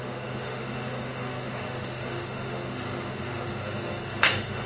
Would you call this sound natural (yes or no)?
no